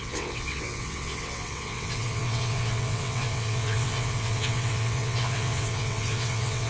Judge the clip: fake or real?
fake